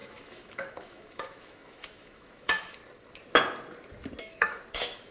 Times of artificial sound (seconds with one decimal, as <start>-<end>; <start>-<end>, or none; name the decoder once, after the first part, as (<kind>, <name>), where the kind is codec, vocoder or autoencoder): 0.0-2.8 (autoencoder, DAC-VAE); 4.2-5.1